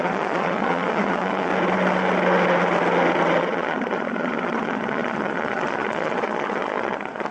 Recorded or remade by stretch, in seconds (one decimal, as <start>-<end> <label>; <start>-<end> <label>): 0.0-1.5 remade; 1.5-3.4 recorded; 3.4-7.3 remade